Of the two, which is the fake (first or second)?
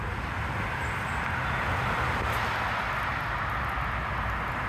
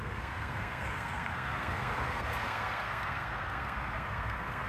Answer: second